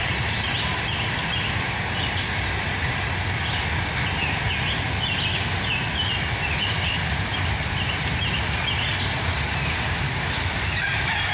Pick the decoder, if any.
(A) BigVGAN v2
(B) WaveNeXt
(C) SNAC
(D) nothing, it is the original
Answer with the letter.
D